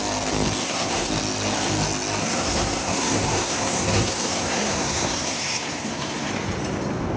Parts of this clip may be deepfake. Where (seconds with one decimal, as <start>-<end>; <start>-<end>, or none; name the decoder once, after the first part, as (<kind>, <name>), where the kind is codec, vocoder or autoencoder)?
0.6-1.1 (codec, SNAC); 2.2-6.3